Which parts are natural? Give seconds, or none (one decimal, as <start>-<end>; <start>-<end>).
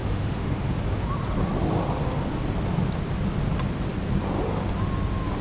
0.8-5.4